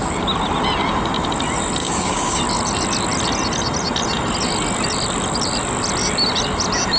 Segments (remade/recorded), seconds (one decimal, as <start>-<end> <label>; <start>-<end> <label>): 0.0-1.8 recorded; 1.8-2.4 remade; 2.4-7.0 recorded